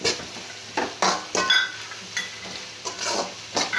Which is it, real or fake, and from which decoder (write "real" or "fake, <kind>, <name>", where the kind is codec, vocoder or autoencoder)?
real